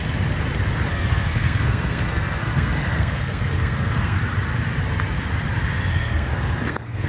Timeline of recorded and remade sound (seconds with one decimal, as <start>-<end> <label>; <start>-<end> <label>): 0.0-0.9 recorded; 0.9-4.2 remade; 4.2-5.9 recorded; 5.9-7.1 remade